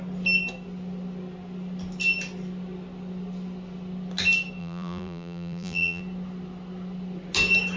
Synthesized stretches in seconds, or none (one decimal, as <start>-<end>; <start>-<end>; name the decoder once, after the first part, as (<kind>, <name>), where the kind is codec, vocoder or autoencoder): 4.6-6.0 (vocoder, BigVGAN v2)